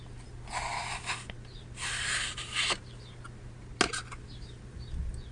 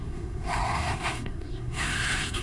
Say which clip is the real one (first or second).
first